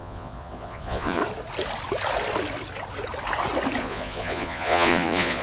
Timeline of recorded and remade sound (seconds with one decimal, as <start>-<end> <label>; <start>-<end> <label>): 0.0-1.2 remade; 1.2-3.8 recorded; 3.8-5.4 remade

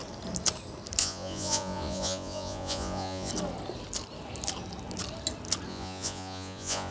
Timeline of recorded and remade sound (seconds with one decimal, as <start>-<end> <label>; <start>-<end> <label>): 0.0-1.0 recorded; 1.0-3.3 remade; 3.3-5.7 recorded; 5.7-6.9 remade

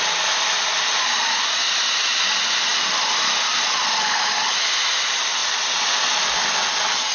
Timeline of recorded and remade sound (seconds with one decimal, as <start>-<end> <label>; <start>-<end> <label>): 0.0-7.1 recorded

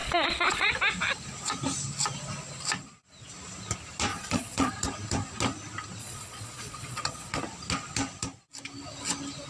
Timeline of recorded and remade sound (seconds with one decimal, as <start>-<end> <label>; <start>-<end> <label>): 0.0-0.7 remade; 0.7-4.1 recorded; 4.1-4.7 remade; 4.7-6.0 recorded; 6.0-7.4 remade; 7.4-9.5 recorded

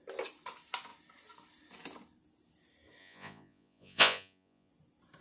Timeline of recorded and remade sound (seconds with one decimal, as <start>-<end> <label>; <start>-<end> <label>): 0.0-3.0 recorded; 3.0-4.7 remade; 4.7-5.2 recorded

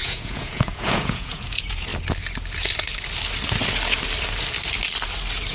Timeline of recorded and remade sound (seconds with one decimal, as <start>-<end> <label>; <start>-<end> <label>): 0.0-1.9 remade; 1.9-5.5 recorded